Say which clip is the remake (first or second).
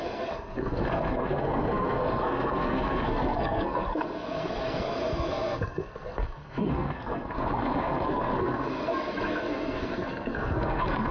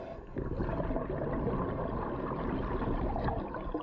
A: first